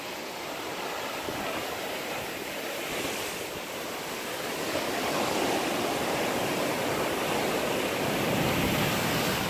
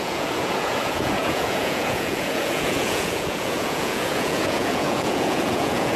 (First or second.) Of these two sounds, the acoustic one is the first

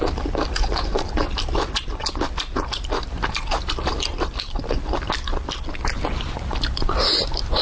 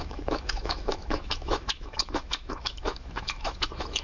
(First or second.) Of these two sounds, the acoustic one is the first